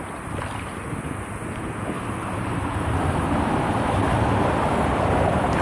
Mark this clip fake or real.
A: real